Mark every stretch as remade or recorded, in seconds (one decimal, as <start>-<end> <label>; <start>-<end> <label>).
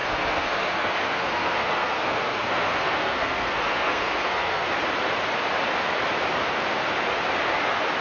0.0-4.7 remade; 4.7-8.0 recorded